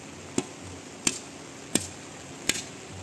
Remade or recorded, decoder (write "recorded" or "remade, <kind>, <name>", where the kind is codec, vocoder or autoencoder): recorded